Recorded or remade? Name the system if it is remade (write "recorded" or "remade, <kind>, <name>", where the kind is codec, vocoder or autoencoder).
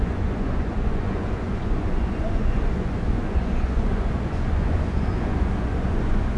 remade, vocoder, Vocos